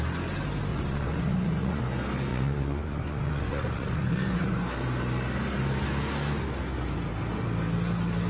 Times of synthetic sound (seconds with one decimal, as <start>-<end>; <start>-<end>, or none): 0.7-1.8; 2.3-4.6